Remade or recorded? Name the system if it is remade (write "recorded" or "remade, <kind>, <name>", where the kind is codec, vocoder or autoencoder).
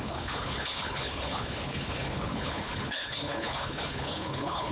remade, codec, HILCodec